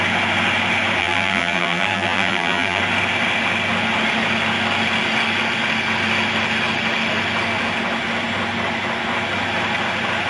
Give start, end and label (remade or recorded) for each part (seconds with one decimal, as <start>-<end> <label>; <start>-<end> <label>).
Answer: 0.0-1.0 recorded; 1.0-2.8 remade; 2.8-10.3 recorded